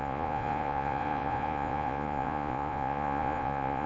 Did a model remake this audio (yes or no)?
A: yes